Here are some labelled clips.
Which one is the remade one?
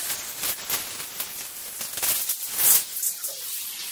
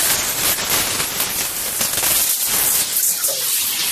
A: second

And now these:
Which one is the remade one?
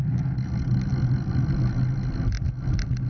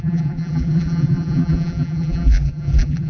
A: second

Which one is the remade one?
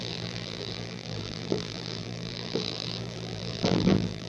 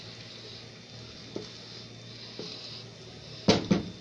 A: first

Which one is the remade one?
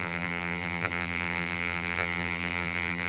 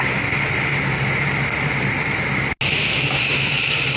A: first